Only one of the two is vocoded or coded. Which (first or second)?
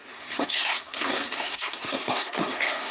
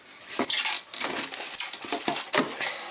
first